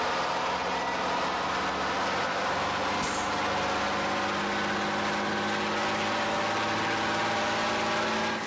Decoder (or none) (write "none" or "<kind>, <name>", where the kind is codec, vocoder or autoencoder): none